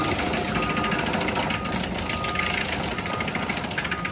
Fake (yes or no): no